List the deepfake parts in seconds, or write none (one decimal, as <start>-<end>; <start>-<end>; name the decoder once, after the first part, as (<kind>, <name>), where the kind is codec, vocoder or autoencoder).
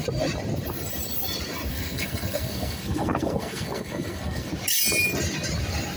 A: 1.7-4.5 (codec, SNAC)